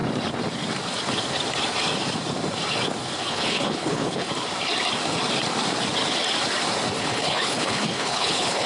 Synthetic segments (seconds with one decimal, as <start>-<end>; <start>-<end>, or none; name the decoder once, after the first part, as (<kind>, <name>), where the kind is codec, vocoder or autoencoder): 3.2-4.3 (codec, HILCodec); 7.0-8.7